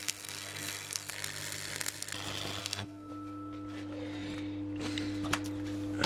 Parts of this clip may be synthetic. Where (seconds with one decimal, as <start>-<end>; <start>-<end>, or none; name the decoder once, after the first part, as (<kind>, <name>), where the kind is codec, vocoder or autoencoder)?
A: 0.0-1.1 (codec, SNAC); 2.6-3.1

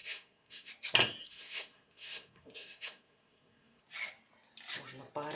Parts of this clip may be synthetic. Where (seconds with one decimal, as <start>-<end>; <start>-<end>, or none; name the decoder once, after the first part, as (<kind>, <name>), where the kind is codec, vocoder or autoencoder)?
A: 0.0-0.7 (codec, SNAC); 1.2-3.8

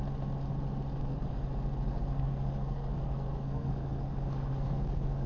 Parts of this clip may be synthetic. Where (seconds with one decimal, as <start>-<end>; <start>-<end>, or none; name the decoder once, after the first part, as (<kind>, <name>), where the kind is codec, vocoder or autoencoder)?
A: 1.0-1.5 (codec, SNAC); 1.9-5.3

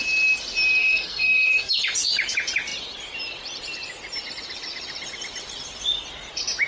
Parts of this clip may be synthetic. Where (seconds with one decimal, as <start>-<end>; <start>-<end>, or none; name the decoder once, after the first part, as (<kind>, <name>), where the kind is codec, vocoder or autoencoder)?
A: 0.8-1.7 (codec, SNAC)